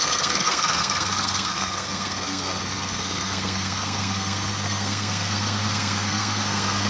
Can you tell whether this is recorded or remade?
remade